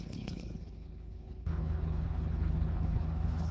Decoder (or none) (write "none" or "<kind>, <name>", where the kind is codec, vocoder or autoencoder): codec, HILCodec